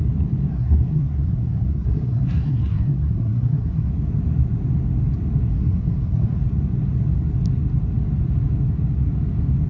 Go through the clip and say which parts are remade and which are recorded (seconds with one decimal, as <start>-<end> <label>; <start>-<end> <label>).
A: 0.0-0.5 recorded; 0.5-3.9 remade; 3.9-5.5 recorded; 5.5-6.4 remade; 6.4-9.7 recorded